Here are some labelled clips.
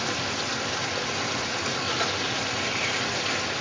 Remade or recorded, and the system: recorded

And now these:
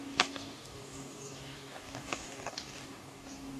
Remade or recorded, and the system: remade, codec, DAC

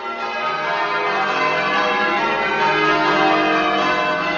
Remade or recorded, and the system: recorded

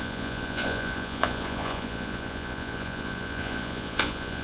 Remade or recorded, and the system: remade, vocoder, Vocos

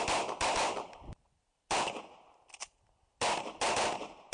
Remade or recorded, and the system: recorded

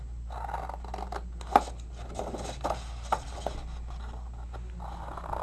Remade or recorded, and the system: recorded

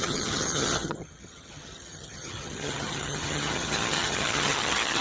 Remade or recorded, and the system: remade, vocoder, HiFi-GAN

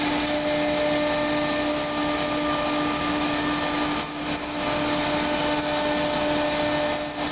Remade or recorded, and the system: recorded